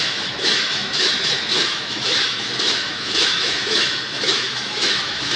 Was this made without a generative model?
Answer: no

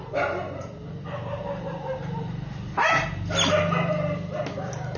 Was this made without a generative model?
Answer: yes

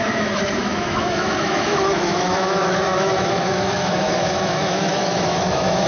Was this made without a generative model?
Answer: no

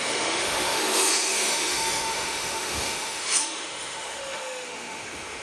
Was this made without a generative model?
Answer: no